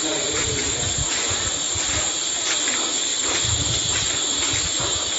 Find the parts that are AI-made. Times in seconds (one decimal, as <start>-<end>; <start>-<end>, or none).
0.4-2.4; 3.1-4.2